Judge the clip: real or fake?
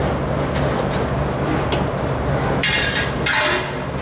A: real